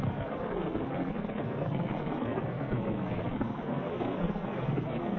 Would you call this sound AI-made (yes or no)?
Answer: yes